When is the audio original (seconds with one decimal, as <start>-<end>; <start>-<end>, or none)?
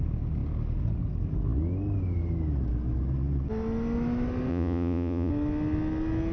0.0-4.5; 5.3-6.3